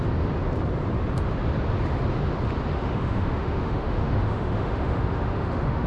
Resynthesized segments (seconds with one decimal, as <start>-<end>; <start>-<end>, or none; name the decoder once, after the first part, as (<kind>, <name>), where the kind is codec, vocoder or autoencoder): 2.7-5.9 (autoencoder, DAC-VAE)